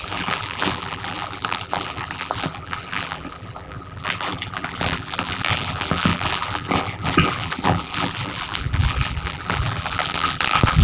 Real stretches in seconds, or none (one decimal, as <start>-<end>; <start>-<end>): none